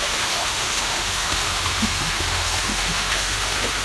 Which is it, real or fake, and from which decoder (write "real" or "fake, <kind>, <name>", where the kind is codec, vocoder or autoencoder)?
fake, autoencoder, DAC-VAE